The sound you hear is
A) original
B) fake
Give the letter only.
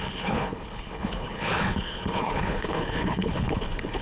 B